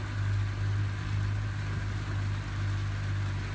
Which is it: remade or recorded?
recorded